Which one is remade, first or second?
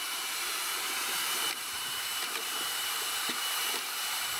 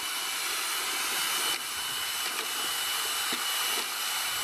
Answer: first